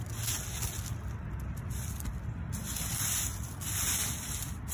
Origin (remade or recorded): recorded